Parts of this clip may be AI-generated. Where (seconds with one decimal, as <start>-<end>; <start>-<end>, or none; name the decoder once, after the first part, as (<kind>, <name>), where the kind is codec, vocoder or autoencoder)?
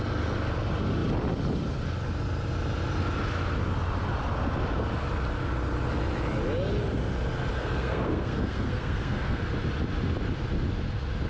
7.5-9.4 (codec, SNAC)